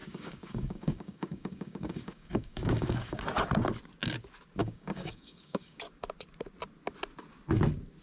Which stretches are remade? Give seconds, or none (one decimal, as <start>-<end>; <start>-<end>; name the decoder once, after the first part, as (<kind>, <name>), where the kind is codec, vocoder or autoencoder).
0.0-3.2 (codec, DAC); 4.6-5.8